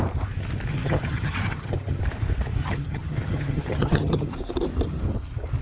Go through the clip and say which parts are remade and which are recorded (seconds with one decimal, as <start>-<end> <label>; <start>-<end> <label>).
0.0-0.7 recorded; 0.7-2.0 remade; 2.0-2.6 recorded; 2.6-4.3 remade; 4.3-5.6 recorded